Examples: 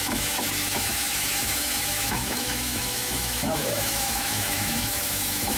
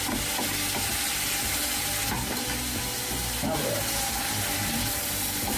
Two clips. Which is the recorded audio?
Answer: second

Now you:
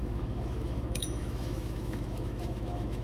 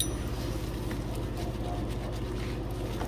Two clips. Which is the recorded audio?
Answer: second